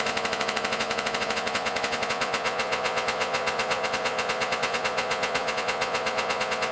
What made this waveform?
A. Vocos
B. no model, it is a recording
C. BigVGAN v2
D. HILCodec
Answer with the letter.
A